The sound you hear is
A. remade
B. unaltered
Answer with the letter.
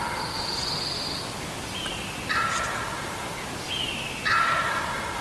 B